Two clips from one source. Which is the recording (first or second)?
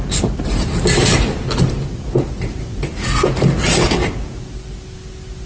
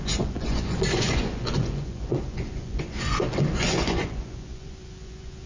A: first